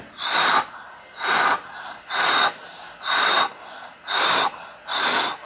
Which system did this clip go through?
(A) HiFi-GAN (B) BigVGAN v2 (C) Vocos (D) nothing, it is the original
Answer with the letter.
D